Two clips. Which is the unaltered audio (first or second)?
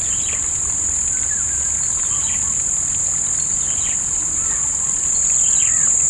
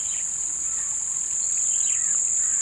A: first